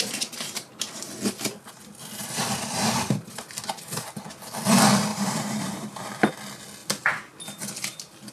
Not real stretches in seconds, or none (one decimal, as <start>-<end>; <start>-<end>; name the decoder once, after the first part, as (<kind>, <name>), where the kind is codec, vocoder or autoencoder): 2.2-3.3 (vocoder, BigVGAN v2); 5.1-6.3